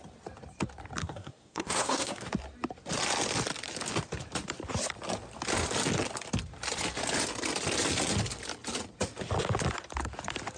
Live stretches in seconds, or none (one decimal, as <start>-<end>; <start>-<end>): 0.0-1.0; 2.3-10.6